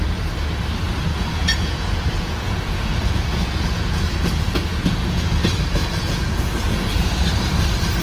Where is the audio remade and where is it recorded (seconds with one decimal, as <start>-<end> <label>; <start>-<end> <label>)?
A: 0.0-1.1 recorded; 1.1-5.2 remade; 5.2-5.8 recorded; 5.8-7.1 remade; 7.1-8.0 recorded

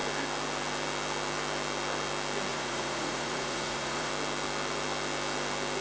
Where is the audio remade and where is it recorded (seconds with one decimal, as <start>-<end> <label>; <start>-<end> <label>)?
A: 0.0-2.5 recorded; 2.5-4.1 remade; 4.1-5.8 recorded

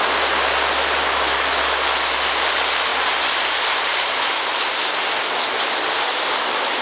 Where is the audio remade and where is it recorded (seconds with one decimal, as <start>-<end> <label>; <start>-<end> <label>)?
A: 0.0-6.8 recorded